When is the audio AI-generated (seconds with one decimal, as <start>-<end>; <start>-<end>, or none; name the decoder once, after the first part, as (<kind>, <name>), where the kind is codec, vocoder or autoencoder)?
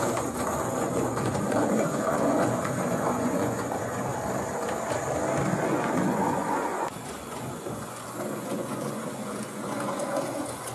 0.0-4.1 (vocoder, Vocos); 5.5-10.7